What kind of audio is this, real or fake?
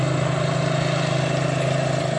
real